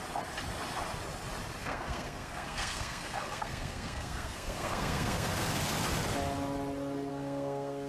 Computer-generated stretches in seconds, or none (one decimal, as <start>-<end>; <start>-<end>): 1.6-5.6; 7.1-7.9